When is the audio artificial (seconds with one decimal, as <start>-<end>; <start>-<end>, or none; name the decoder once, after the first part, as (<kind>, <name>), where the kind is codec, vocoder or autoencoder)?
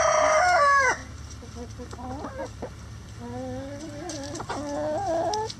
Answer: 1.0-1.5 (vocoder, BigVGAN v2); 2.4-4.5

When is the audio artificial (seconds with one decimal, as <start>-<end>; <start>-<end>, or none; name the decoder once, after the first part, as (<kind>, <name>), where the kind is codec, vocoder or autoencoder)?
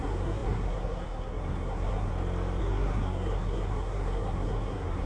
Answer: 0.0-2.1 (codec, SNAC); 2.6-5.1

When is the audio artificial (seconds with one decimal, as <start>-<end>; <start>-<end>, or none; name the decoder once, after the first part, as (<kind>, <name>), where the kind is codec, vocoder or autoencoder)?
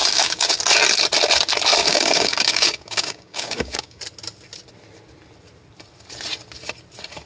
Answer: 0.0-0.6 (codec, DAC); 1.8-4.0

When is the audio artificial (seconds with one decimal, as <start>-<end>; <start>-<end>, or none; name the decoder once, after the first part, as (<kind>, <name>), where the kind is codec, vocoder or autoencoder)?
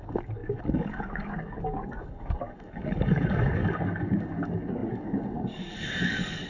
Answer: 0.0-6.5 (codec, DAC)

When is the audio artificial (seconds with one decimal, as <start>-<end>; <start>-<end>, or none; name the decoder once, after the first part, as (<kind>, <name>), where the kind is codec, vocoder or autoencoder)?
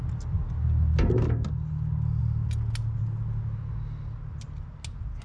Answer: none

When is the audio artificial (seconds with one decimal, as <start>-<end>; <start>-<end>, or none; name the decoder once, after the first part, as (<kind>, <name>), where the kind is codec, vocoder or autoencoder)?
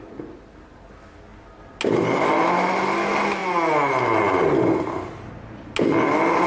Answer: none